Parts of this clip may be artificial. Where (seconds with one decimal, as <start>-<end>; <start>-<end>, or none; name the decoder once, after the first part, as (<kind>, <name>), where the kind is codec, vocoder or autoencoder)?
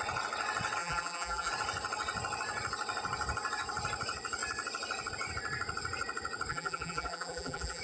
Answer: 0.8-1.5 (vocoder, BigVGAN v2); 6.5-7.8